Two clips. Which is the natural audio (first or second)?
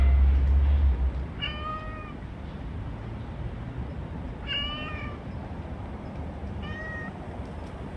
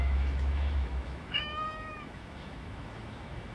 first